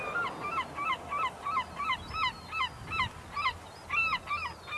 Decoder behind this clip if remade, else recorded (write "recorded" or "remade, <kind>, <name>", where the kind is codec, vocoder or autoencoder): recorded